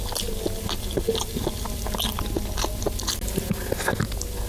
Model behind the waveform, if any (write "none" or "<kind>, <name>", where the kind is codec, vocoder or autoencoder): none